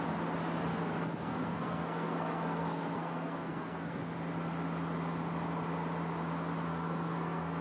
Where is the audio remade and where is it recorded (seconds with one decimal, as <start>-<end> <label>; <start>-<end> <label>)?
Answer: 0.0-0.7 recorded; 0.7-4.0 remade; 4.0-6.7 recorded; 6.7-7.6 remade